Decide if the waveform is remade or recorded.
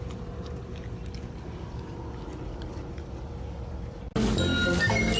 recorded